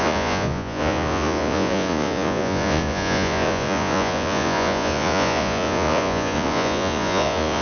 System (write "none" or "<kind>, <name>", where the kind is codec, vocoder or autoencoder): vocoder, Vocos